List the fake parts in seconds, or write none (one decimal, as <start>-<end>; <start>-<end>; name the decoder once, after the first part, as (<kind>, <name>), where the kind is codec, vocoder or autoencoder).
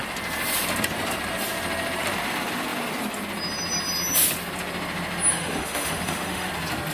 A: 5.3-6.5 (autoencoder, DAC-VAE)